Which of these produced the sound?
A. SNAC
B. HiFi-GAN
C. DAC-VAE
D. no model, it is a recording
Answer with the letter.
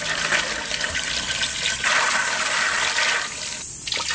D